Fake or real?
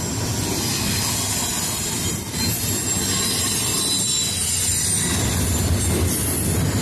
real